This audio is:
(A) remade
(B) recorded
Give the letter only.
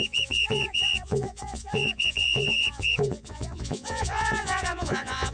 A